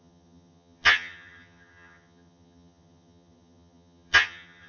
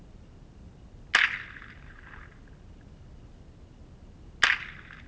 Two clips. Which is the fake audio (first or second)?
first